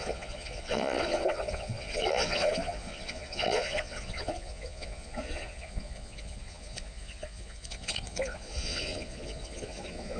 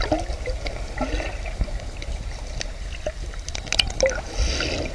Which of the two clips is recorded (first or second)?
second